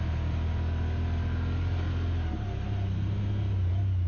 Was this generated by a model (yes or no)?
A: no